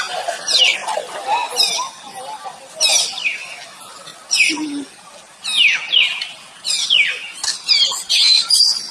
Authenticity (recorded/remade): recorded